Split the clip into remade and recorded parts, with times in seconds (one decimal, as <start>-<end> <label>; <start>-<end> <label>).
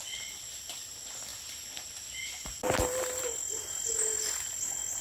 0.0-5.0 recorded